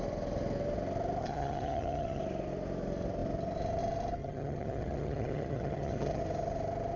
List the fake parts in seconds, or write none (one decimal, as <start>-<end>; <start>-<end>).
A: 1.2-2.2; 4.2-6.2

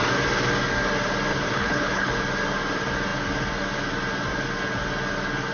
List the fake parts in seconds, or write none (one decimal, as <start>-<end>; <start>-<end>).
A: 1.3-2.1

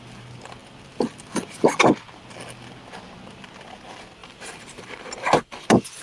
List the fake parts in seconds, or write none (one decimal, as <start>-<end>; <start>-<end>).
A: 4.2-5.6